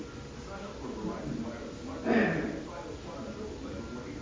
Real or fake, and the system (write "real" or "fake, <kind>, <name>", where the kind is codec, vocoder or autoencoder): real